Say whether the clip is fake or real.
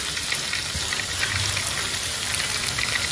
real